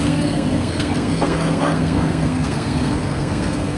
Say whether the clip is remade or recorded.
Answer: remade